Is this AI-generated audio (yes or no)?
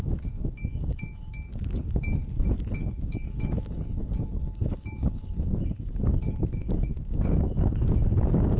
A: yes